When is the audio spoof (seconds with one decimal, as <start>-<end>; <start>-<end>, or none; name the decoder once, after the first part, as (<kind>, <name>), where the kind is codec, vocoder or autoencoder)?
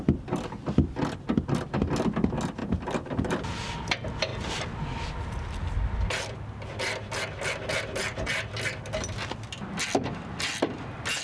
none